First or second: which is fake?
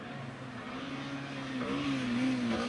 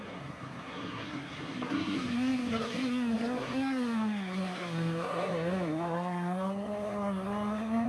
second